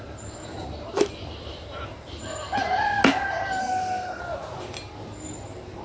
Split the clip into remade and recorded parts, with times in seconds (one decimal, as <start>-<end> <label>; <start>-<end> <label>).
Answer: 0.0-3.6 recorded; 3.6-4.2 remade; 4.2-5.8 recorded